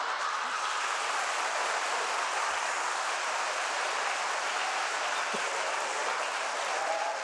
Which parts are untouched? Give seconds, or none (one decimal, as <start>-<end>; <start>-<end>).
0.0-7.2